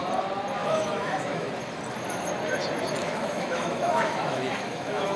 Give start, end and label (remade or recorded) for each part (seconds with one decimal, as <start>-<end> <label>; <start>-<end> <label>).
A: 0.0-0.6 recorded; 0.6-1.5 remade; 1.5-3.0 recorded; 3.0-5.2 remade